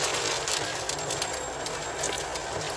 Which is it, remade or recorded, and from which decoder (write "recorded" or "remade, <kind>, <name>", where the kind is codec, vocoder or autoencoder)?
recorded